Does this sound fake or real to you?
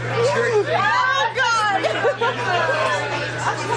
real